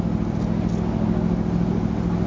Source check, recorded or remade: recorded